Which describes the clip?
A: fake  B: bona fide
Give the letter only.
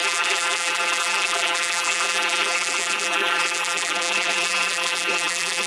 A